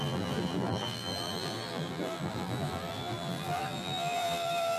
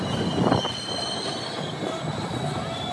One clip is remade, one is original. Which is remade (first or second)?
first